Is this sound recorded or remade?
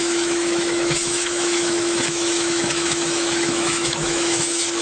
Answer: remade